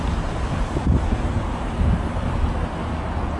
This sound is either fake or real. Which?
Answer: real